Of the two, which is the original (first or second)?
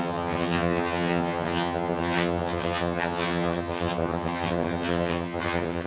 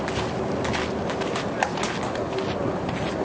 second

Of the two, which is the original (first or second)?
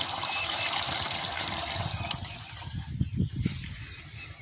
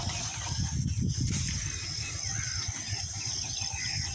second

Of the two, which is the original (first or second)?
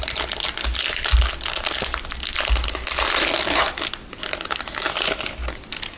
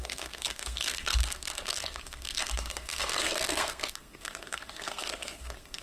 first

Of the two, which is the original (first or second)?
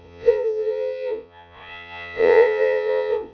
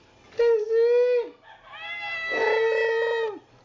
second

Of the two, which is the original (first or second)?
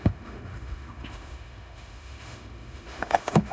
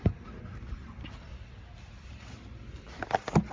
second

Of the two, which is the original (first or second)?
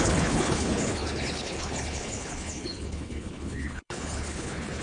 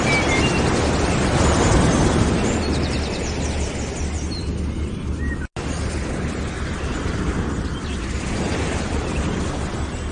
second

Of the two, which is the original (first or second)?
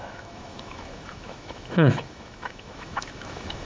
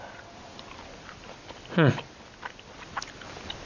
second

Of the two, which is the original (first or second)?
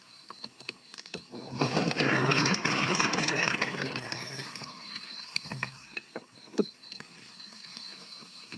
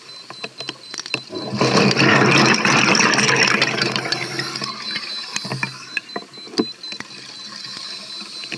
second